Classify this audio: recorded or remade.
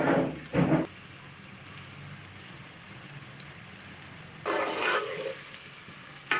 recorded